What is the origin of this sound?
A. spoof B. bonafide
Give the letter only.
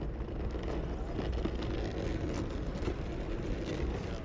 B